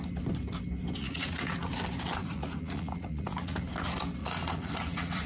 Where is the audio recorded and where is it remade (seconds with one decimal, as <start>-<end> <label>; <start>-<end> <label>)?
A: 0.0-1.0 recorded; 1.0-1.7 remade; 1.7-2.2 recorded; 2.2-3.6 remade; 3.6-4.2 recorded; 4.2-5.3 remade